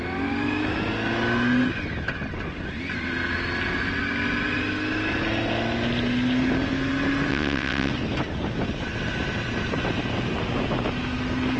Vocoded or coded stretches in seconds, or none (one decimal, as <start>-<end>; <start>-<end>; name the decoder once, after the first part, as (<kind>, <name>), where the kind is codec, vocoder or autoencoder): 7.3-7.9 (vocoder, WaveNeXt)